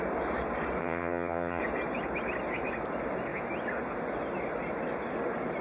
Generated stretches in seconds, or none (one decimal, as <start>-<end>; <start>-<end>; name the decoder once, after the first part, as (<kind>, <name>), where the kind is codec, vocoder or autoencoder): 0.8-1.6 (vocoder, HiFi-GAN)